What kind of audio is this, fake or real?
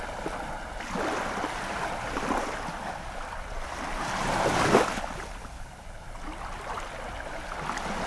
real